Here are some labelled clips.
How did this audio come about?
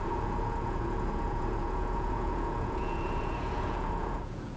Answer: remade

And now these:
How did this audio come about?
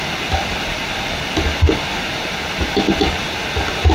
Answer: recorded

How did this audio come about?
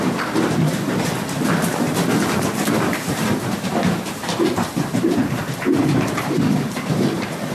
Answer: remade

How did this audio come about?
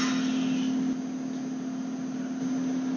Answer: recorded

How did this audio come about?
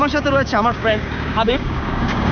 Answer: remade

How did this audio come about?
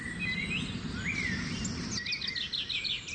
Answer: recorded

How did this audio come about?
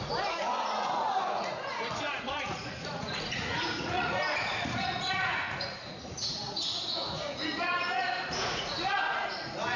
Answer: remade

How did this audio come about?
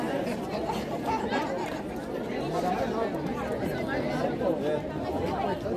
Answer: recorded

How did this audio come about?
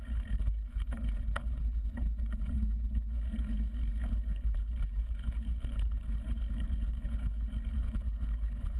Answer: remade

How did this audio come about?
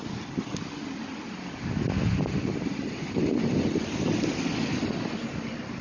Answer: recorded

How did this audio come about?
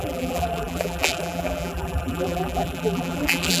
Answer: remade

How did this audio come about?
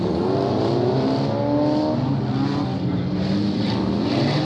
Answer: recorded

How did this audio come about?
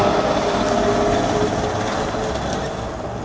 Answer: recorded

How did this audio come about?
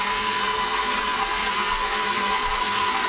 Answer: remade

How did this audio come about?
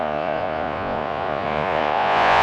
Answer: remade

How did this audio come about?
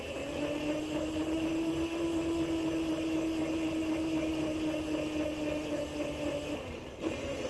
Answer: recorded